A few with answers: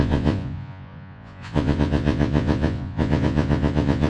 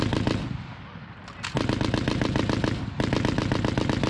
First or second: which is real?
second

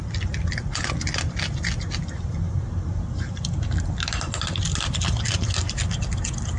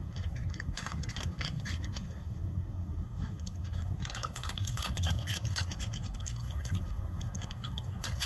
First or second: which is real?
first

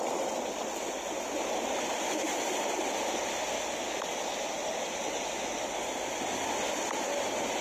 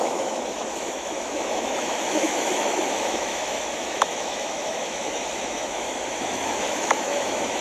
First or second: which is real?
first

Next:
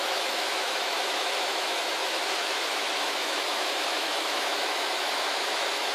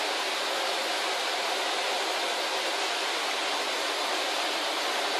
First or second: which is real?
second